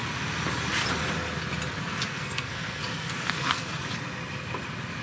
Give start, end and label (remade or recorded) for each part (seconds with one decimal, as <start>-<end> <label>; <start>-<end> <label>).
0.0-1.8 recorded; 1.8-3.8 remade; 3.8-5.0 recorded